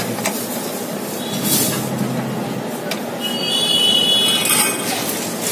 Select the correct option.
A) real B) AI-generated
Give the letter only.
A